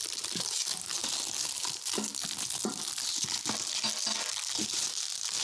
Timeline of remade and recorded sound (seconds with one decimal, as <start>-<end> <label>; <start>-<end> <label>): 0.0-1.0 remade; 1.0-1.5 recorded; 1.5-2.1 remade; 2.1-5.4 recorded